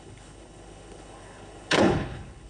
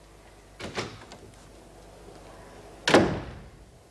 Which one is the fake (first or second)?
first